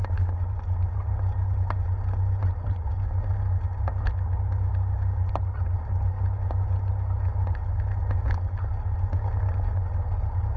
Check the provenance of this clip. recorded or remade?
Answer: recorded